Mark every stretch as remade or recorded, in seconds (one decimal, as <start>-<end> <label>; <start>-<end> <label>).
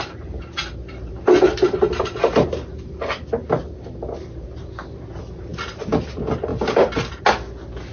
0.0-7.9 recorded